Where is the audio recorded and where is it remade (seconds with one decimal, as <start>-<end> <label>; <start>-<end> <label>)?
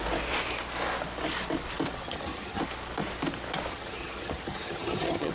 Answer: 0.0-2.0 recorded; 2.0-2.6 remade; 2.6-3.7 recorded; 3.7-5.3 remade